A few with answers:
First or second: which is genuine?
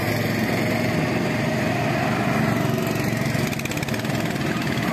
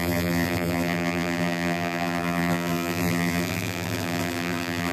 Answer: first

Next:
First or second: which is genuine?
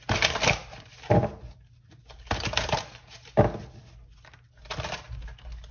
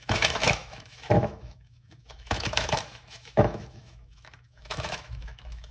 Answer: first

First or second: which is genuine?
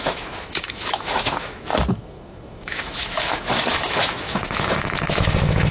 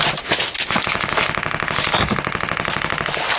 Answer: second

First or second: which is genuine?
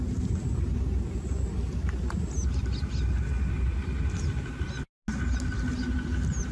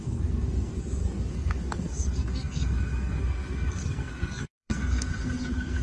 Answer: first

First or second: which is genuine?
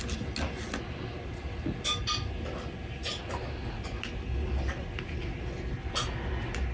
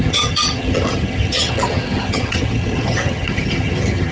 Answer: first